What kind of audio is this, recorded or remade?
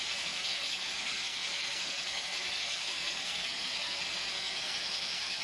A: remade